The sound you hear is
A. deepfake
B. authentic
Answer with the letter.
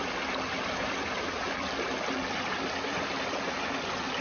B